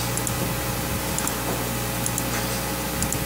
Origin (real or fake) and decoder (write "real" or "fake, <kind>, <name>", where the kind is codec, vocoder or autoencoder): real